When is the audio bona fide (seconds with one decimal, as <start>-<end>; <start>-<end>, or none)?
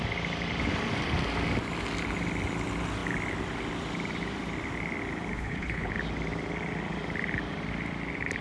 0.0-5.3; 5.9-8.4